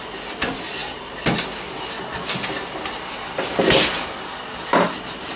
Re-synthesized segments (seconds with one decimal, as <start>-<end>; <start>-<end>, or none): none

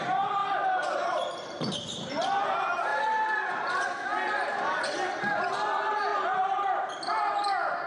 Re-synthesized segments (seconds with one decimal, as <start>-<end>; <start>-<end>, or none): 0.4-1.7; 2.9-3.7; 6.1-6.6

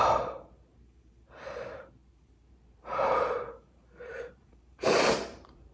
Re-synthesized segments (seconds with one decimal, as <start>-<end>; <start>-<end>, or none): 0.0-5.7

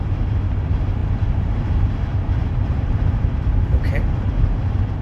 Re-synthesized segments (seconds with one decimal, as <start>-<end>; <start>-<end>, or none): 1.0-4.0

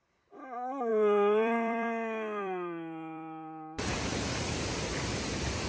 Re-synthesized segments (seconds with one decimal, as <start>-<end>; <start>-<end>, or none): 0.9-3.9

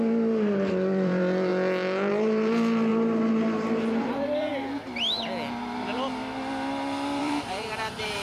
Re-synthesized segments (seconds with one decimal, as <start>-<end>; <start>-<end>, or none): 0.0-1.5; 2.1-2.9; 3.4-4.5; 7.2-8.2

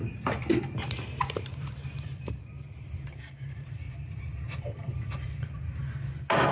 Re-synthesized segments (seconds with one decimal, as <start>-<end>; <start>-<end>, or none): 0.0-5.8